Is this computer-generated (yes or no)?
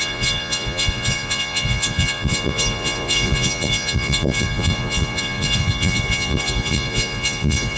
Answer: yes